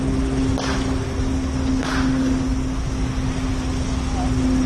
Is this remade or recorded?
recorded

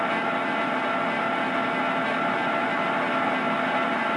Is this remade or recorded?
recorded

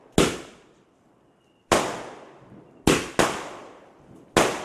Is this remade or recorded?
recorded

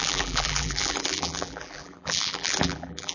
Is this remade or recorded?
remade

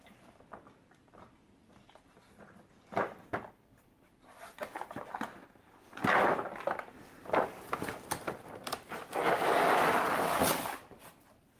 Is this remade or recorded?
remade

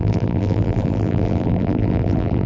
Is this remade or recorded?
remade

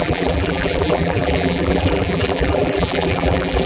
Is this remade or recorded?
remade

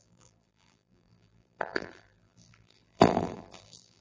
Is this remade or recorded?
remade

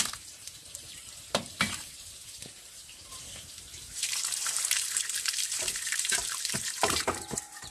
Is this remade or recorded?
remade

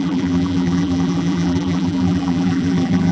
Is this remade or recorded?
remade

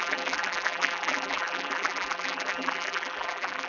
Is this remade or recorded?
remade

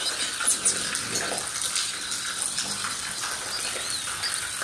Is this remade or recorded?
recorded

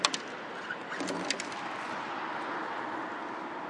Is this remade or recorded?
recorded